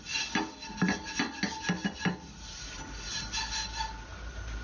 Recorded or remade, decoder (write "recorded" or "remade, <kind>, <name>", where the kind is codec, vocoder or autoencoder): recorded